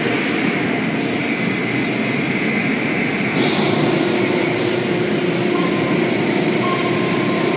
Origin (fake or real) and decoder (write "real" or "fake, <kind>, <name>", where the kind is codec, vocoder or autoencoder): real